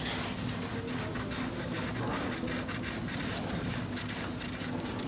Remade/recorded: recorded